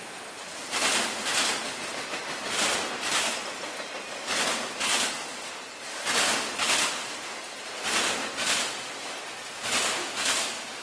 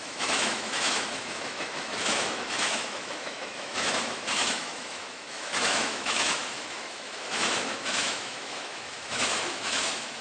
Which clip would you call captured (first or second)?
first